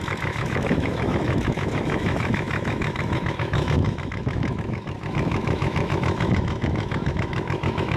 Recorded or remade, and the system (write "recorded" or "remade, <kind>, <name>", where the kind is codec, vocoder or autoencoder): remade, autoencoder, DAC-VAE